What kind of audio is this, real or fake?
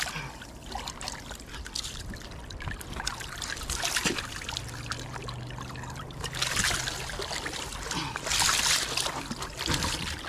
real